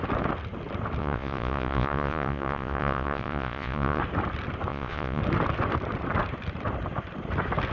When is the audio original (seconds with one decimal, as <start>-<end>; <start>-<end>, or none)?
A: 0.0-1.0; 4.0-4.7; 5.2-7.7